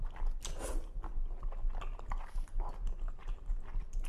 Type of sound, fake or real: real